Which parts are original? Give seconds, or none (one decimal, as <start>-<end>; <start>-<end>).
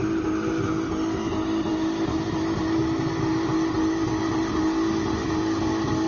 0.0-6.1